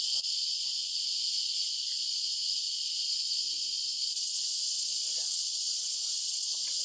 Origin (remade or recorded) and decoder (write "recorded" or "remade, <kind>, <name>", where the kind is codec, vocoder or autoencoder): remade, vocoder, Vocos